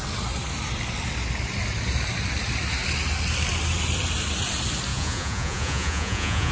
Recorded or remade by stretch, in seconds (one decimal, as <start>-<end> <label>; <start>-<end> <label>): 0.0-4.9 recorded; 4.9-6.5 remade

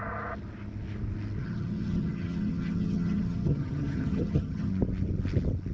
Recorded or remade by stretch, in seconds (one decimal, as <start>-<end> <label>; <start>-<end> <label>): 0.0-1.4 recorded; 1.4-4.7 remade; 4.7-5.7 recorded

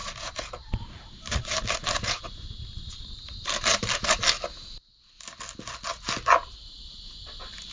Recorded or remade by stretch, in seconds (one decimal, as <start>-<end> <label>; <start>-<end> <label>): 0.0-4.2 remade; 4.2-7.7 recorded

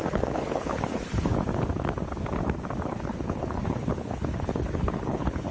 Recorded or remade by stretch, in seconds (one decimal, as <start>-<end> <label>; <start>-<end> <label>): 0.0-1.3 remade; 1.3-2.9 recorded; 2.9-5.5 remade